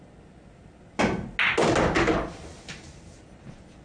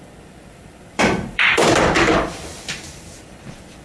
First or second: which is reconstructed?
second